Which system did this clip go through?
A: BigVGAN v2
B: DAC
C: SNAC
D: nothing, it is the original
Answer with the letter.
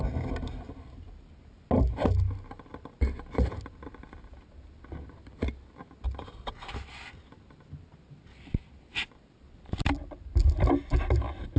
D